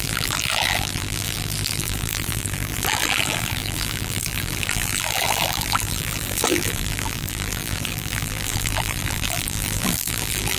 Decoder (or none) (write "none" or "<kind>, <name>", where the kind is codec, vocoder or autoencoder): vocoder, BigVGAN v2